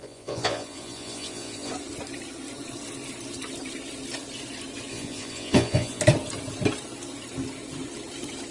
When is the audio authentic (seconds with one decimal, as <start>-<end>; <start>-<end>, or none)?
1.7-4.9; 6.0-8.5

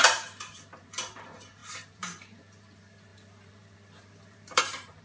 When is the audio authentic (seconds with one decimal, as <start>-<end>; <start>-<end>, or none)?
none